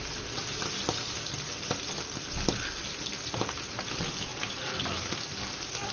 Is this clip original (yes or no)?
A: yes